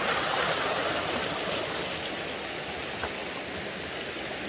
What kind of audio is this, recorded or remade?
recorded